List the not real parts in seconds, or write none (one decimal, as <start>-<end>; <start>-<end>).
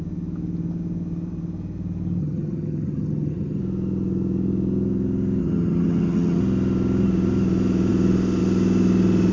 2.2-3.6; 5.4-6.4